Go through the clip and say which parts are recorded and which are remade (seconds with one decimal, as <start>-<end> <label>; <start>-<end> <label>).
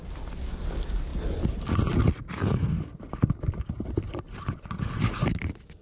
0.0-5.8 recorded